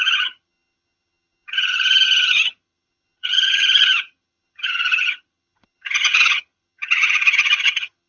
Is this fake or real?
fake